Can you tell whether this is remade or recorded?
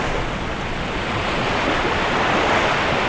recorded